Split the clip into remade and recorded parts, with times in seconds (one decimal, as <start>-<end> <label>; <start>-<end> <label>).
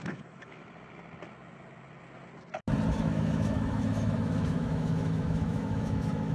0.0-0.6 remade; 0.6-2.9 recorded; 2.9-6.3 remade